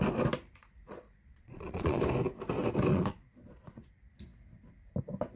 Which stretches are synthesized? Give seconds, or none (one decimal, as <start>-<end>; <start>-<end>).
0.6-2.0; 2.9-3.9